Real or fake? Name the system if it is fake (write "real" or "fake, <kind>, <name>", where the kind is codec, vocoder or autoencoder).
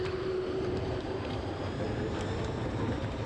fake, vocoder, BigVGAN v2